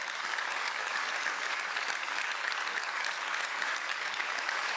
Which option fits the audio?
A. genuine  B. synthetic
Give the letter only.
B